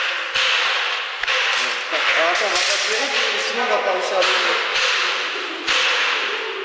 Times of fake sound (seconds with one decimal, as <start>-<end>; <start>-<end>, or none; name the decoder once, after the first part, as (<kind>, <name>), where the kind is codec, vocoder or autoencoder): 4.7-5.5 (vocoder, BigVGAN v2)